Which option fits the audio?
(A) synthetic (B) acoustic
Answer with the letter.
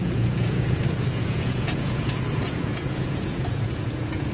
A